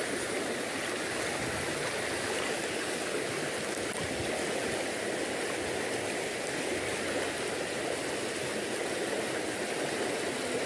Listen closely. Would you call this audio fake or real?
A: real